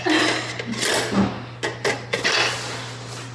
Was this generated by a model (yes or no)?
no